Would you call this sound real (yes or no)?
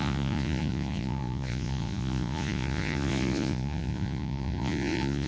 no